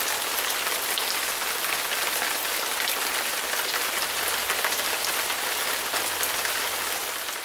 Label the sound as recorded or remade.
recorded